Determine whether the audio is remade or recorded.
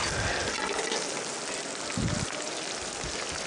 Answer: recorded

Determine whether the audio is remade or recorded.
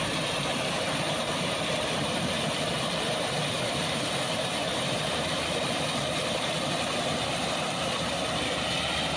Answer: recorded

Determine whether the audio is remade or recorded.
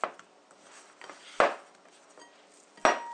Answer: recorded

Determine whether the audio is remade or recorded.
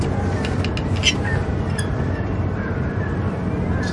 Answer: recorded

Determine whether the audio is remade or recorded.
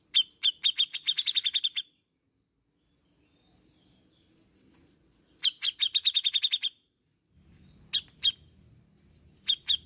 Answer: recorded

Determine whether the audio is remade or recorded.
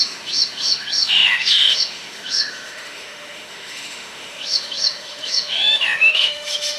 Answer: remade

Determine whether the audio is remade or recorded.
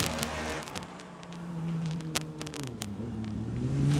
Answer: remade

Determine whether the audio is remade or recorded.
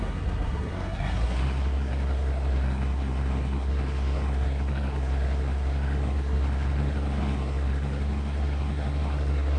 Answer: remade